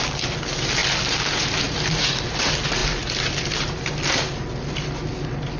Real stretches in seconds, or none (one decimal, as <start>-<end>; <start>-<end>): 0.0-5.6